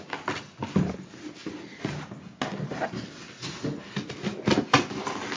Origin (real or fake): real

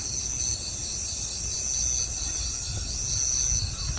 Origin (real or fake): real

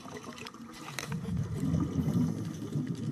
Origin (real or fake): real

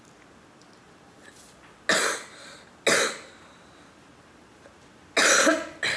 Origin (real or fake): real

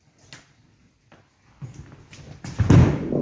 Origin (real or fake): real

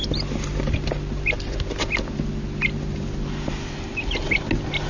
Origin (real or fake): real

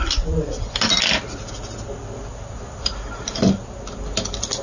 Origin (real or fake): real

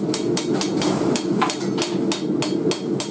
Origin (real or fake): real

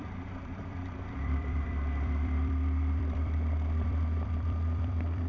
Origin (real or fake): fake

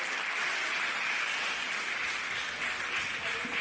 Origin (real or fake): real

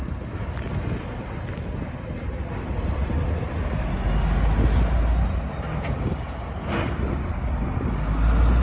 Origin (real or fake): real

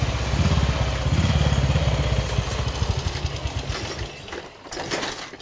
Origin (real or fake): real